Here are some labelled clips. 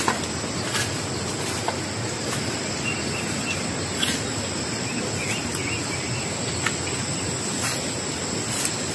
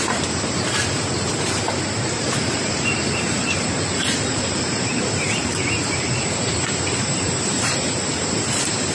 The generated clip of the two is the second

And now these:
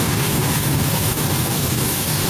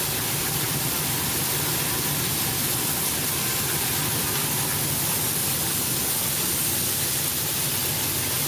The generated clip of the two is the first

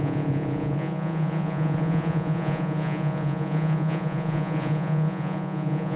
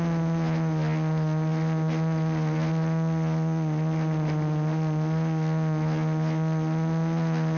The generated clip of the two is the first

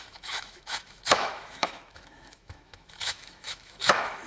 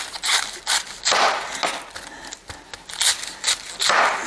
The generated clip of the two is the first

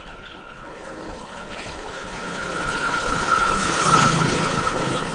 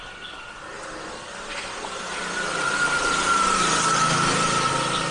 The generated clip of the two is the first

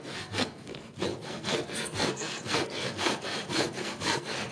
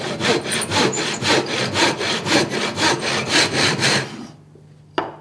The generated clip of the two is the first